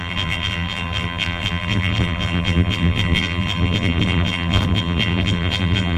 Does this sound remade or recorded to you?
remade